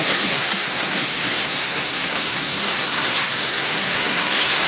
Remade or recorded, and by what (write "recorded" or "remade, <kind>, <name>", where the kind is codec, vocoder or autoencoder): remade, codec, SNAC